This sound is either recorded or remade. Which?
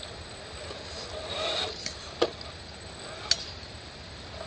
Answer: recorded